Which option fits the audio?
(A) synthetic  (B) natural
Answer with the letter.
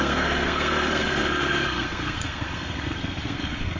A